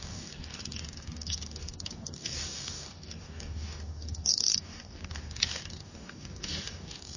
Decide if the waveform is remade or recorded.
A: remade